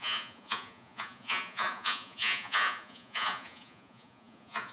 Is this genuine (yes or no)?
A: no